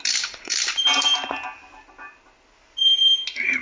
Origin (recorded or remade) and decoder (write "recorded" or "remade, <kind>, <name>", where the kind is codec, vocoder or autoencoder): recorded